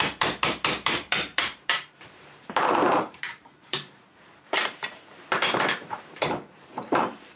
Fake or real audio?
fake